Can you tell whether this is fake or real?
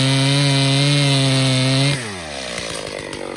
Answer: real